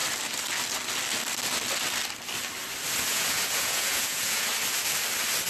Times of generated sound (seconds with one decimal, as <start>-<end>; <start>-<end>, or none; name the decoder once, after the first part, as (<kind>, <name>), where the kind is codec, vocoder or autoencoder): 3.1-4.5 (vocoder, Vocos)